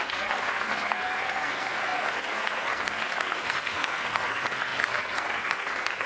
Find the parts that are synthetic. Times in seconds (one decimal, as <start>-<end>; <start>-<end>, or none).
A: 0.0-6.1